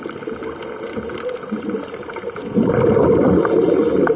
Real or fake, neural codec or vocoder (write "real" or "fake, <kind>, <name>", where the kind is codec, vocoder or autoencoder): real